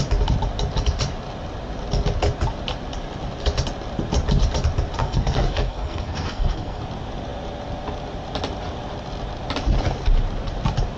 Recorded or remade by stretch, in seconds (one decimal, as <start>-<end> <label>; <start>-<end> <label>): 0.0-5.0 recorded; 5.0-6.8 remade; 6.8-11.0 recorded